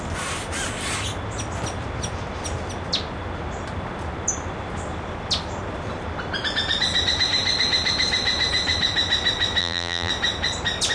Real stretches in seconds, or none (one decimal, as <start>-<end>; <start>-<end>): 0.0-9.6; 10.1-10.9